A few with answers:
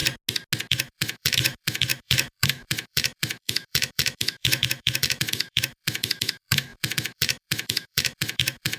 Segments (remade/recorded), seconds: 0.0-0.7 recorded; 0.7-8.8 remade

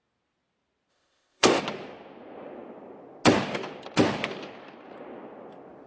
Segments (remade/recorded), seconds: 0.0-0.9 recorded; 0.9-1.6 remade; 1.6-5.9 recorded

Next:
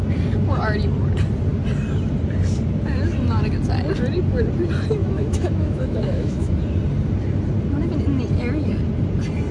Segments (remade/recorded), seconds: 0.0-5.0 recorded; 5.0-6.5 remade; 6.5-9.5 recorded